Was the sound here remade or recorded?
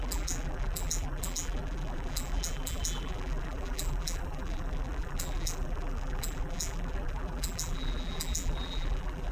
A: remade